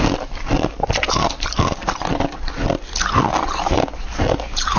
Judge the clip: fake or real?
real